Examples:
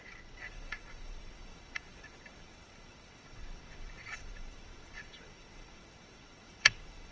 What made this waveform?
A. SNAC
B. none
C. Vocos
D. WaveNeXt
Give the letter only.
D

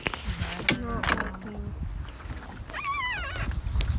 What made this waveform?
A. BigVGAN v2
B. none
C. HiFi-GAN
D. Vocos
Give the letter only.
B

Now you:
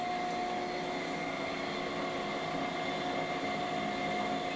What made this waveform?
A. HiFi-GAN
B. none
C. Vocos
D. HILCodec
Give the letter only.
B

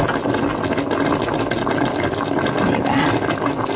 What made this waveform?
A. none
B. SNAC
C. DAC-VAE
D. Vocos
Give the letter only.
A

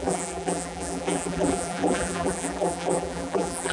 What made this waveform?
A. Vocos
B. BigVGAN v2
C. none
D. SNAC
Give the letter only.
B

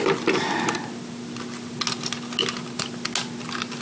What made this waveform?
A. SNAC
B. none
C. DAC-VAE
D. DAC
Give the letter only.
B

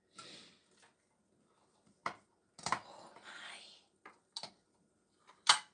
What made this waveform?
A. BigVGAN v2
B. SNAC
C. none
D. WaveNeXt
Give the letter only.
C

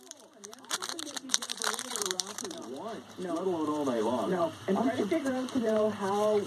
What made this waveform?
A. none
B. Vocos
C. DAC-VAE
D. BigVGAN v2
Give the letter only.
D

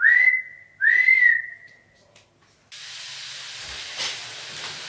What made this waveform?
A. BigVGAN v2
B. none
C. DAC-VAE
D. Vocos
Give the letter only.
B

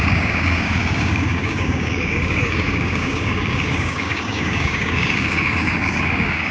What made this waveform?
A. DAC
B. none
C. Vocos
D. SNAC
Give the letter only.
A